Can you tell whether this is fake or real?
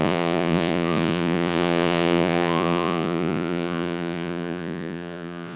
fake